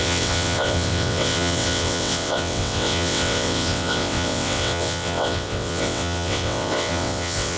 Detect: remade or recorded remade